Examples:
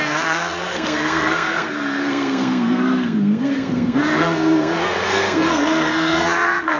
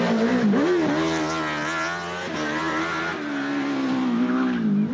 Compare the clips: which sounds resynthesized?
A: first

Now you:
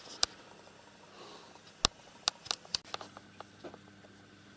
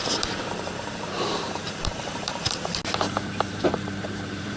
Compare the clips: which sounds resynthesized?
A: second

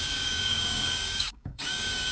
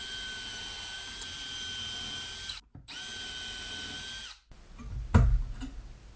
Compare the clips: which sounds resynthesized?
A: first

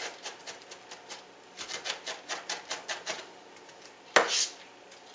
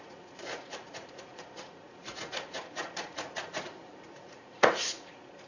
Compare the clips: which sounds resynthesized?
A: second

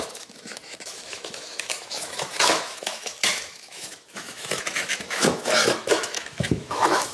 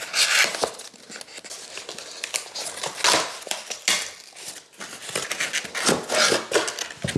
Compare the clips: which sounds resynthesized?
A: first